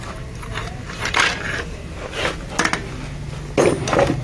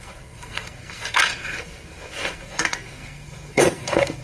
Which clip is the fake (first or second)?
second